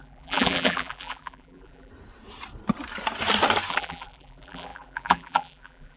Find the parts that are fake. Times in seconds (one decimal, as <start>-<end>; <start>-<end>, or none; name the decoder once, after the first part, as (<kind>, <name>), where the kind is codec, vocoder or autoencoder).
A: 0.0-1.9 (vocoder, BigVGAN v2); 3.7-6.0